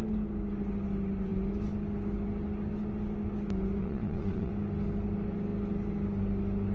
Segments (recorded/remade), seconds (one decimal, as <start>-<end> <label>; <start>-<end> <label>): 0.0-3.8 recorded; 3.8-4.5 remade; 4.5-6.7 recorded